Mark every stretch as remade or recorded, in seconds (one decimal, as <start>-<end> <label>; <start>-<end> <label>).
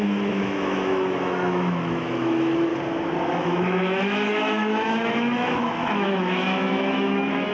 0.0-2.7 remade; 2.7-3.2 recorded; 3.2-7.5 remade